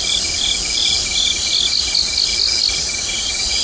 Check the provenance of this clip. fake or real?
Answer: real